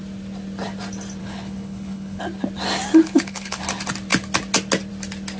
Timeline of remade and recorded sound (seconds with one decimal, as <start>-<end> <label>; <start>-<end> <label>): 0.0-1.2 recorded; 1.2-2.2 remade; 2.2-3.0 recorded; 3.0-3.6 remade; 3.6-5.4 recorded